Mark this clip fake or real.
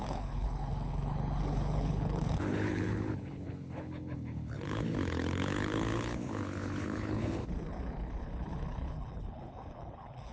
fake